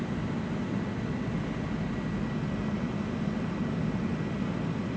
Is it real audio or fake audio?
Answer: real